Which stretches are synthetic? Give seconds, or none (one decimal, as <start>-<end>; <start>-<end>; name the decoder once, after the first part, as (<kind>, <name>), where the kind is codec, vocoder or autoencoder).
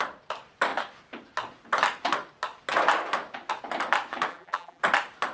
4.3-4.8 (vocoder, BigVGAN v2)